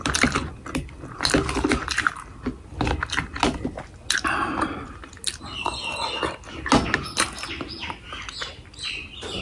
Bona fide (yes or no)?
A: yes